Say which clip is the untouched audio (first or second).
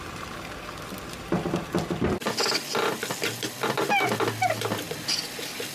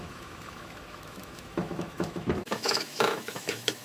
first